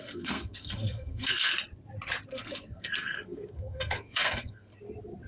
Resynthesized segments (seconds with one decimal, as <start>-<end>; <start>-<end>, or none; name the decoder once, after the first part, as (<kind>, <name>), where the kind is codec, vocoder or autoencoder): 0.0-1.5 (codec, SNAC); 2.3-4.7